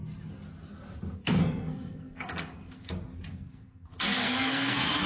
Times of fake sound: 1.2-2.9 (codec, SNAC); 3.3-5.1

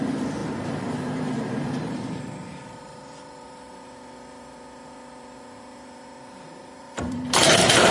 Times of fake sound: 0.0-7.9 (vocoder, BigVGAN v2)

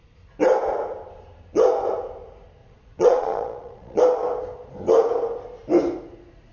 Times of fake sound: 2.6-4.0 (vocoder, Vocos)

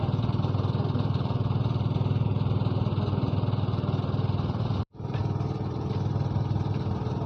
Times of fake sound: 0.0-2.9 (vocoder, BigVGAN v2); 4.8-5.2; 5.9-7.3

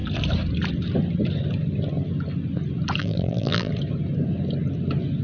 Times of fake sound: 3.0-3.7 (vocoder, BigVGAN v2)

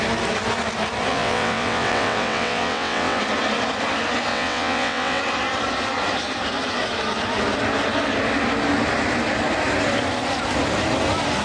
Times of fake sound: 1.1-3.2 (vocoder, WaveNeXt); 4.3-5.2

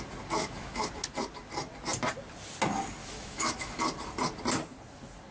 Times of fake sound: 0.4-0.9 (autoencoder, DAC-VAE); 3.0-3.8

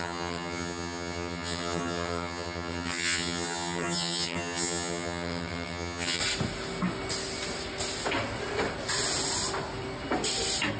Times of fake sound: 0.0-6.2 (vocoder, HiFi-GAN)